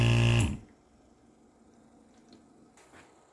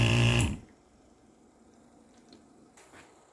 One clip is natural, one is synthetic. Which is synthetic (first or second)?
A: second